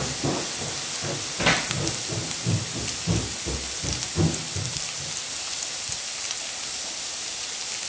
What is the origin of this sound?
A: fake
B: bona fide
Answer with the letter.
B